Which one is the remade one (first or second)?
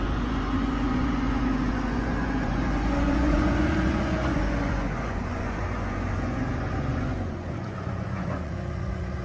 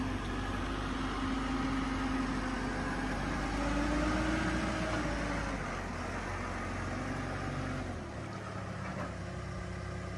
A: first